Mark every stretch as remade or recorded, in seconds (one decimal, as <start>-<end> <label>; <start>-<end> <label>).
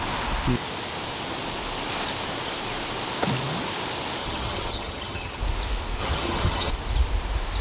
0.0-4.2 recorded; 4.2-5.4 remade; 5.4-6.0 recorded; 6.0-6.7 remade; 6.7-7.6 recorded